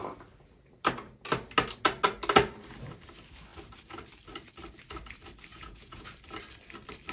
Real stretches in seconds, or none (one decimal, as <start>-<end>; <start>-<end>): 0.0-5.5; 6.1-7.1